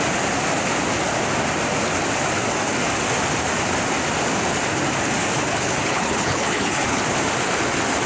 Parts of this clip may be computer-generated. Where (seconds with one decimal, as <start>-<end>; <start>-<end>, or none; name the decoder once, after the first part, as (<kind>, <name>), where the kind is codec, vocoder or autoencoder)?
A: 5.5-7.0 (codec, HILCodec)